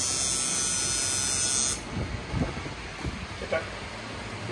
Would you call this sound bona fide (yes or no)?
yes